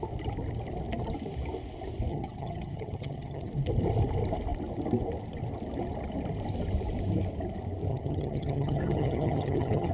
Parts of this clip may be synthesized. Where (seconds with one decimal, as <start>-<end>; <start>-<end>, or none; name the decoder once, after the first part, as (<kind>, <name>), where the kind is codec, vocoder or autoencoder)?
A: 2.1-3.5 (vocoder, HiFi-GAN); 7.9-9.9